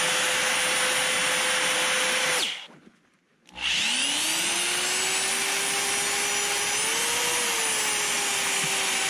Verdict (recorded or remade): recorded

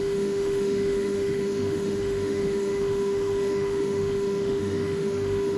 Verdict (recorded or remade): remade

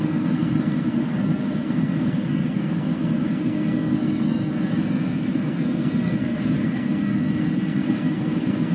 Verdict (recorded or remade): remade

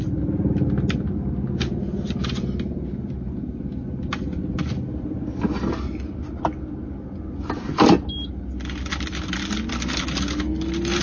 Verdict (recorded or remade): recorded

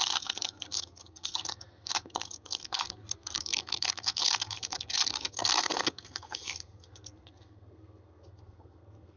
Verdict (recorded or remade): remade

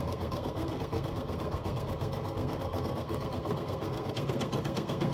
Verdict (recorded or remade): remade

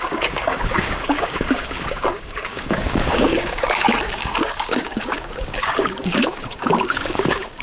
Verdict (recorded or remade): remade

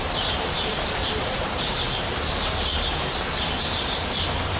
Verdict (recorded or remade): remade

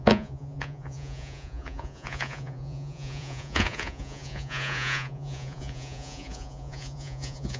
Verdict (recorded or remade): remade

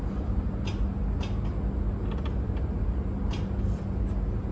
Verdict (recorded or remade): recorded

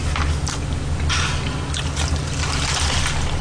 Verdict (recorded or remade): recorded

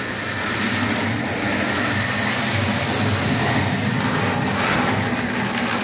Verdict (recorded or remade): recorded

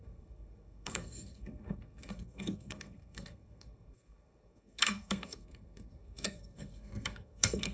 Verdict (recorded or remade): remade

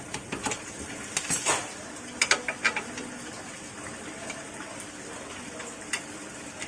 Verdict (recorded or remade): recorded